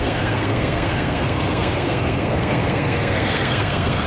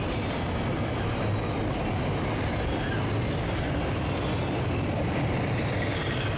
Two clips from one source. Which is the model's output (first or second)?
first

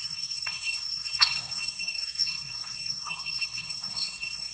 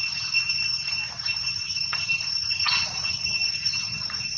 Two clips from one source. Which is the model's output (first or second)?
first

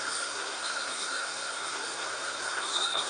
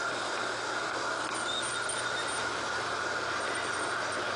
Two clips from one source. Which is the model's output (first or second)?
first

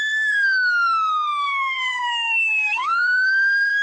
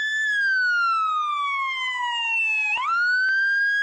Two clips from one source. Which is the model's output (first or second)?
first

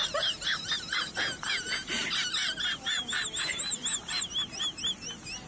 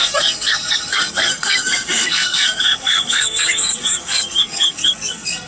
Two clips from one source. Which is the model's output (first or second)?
second